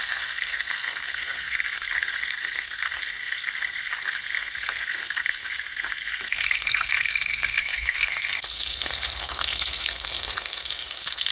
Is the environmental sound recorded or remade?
remade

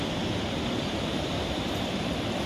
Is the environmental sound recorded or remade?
recorded